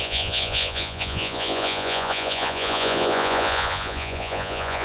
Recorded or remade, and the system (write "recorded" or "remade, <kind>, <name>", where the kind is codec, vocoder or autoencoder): remade, vocoder, Vocos